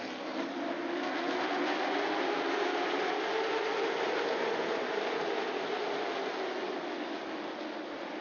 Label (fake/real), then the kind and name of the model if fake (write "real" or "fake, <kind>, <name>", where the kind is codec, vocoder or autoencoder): real